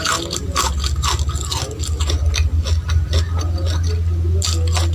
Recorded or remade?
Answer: recorded